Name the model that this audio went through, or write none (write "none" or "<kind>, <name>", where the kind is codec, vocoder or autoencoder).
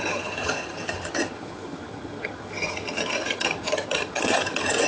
vocoder, HiFi-GAN